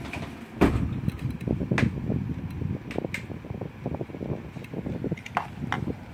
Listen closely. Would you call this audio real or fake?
real